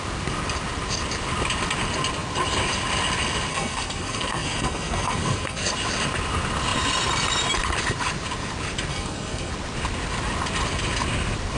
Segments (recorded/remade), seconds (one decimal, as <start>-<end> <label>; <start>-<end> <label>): 0.0-3.5 recorded; 3.5-5.7 remade; 5.7-8.9 recorded; 8.9-9.5 remade; 9.5-11.6 recorded